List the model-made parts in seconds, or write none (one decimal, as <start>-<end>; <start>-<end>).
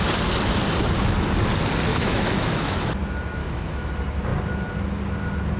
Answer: 1.9-2.9; 3.4-3.9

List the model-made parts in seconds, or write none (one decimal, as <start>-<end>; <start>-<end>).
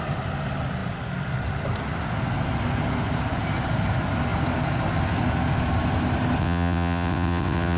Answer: 6.4-7.8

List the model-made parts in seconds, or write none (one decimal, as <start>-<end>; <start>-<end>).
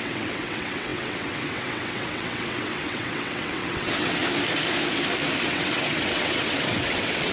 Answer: 0.0-4.2; 5.4-7.3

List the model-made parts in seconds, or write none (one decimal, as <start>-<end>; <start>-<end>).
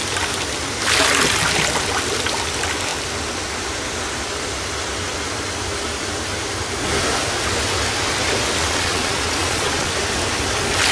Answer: 8.6-9.9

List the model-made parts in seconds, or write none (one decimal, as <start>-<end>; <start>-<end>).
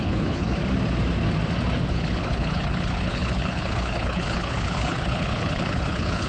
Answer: 0.0-0.6; 1.9-6.3